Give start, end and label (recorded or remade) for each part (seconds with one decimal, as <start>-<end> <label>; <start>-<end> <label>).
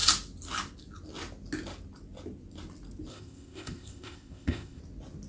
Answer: 0.0-3.1 recorded; 3.1-4.8 remade; 4.8-5.3 recorded